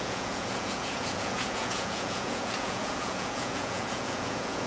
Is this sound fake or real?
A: fake